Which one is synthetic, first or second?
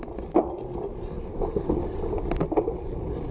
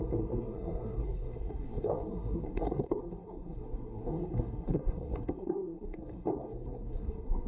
second